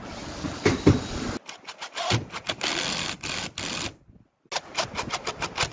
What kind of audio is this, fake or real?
real